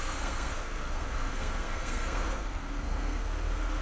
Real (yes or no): no